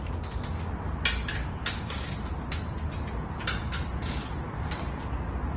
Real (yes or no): yes